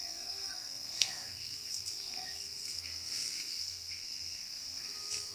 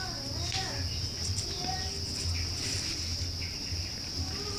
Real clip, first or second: second